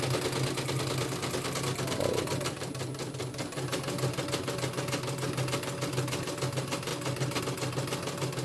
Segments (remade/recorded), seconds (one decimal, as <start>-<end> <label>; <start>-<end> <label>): 0.0-8.4 recorded